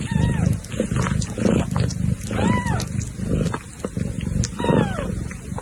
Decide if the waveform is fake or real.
real